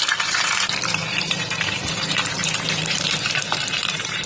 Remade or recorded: remade